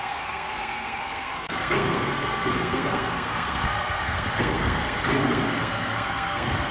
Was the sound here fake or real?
fake